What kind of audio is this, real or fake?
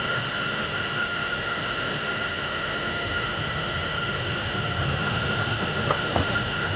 fake